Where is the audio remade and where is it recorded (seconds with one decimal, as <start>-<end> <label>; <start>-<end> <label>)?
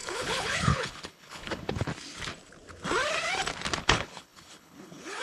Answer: 0.0-1.9 remade; 1.9-3.8 recorded; 3.8-5.2 remade